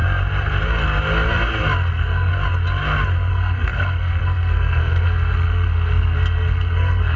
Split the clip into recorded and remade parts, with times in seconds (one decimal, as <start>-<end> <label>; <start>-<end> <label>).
0.0-1.9 recorded; 1.9-2.3 remade; 2.3-3.3 recorded; 3.3-7.2 remade